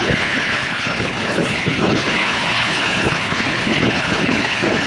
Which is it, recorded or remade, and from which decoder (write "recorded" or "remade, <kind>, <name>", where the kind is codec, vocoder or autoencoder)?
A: remade, codec, HILCodec